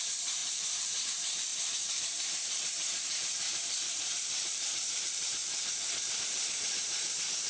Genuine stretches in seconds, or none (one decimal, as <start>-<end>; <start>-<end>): 5.4-6.1